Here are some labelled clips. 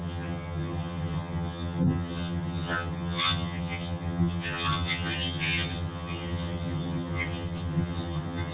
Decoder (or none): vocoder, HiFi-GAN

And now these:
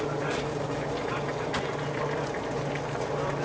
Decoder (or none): none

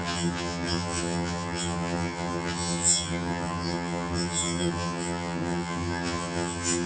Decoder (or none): vocoder, HiFi-GAN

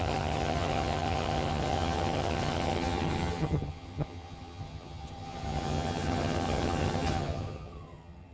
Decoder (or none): vocoder, HiFi-GAN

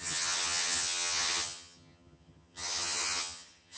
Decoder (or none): vocoder, HiFi-GAN